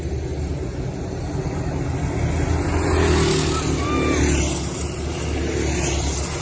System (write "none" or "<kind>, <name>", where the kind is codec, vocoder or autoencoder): none